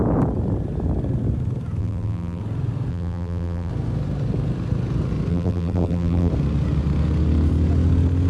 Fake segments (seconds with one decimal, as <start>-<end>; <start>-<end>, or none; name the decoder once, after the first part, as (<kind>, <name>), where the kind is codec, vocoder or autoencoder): 1.8-2.4 (vocoder, BigVGAN v2); 2.9-3.7; 5.3-6.3